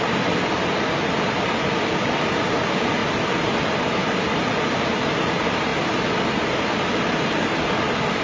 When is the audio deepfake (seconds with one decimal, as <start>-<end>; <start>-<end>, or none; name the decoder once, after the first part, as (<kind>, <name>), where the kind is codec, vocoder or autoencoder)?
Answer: none